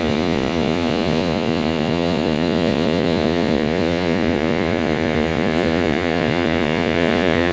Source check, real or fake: fake